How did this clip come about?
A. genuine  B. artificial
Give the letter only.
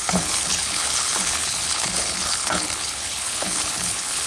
B